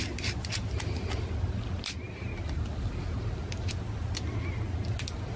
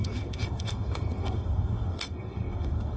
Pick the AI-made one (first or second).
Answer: second